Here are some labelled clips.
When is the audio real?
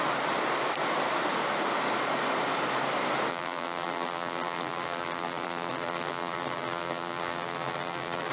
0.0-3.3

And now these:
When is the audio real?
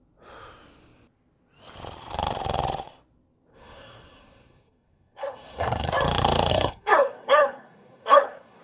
0.0-3.5; 5.9-6.5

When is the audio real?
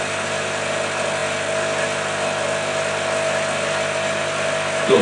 0.0-5.0